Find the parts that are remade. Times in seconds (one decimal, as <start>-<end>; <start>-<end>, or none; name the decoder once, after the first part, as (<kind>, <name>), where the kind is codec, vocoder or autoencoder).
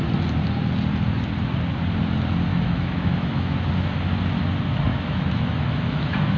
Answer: 2.5-3.7 (autoencoder, DAC-VAE); 4.9-6.4